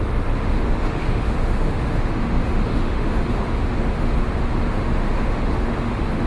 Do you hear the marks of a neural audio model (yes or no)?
yes